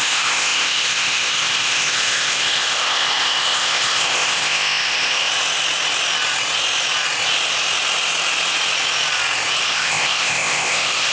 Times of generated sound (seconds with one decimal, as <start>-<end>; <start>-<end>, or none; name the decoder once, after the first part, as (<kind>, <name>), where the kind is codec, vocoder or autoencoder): 0.0-5.3 (codec, ZipCodec); 9.6-11.1